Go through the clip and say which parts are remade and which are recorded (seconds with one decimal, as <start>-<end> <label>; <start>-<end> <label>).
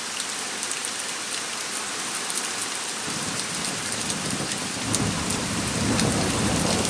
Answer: 0.0-6.9 recorded